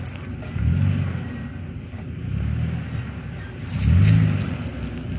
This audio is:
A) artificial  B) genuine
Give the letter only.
B